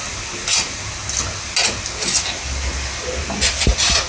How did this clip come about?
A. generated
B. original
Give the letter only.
B